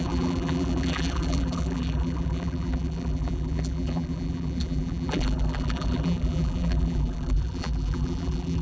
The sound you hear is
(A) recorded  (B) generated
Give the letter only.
B